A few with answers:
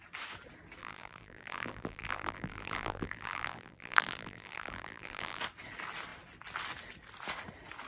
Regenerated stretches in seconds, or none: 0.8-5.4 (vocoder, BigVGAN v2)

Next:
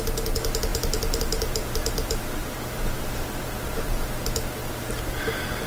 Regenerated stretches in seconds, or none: 0.7-4.1 (vocoder, BigVGAN v2); 4.6-5.2